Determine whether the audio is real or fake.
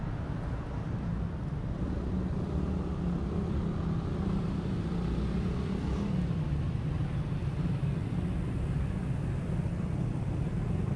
real